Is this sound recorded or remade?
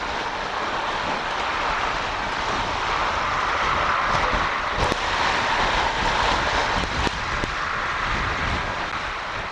recorded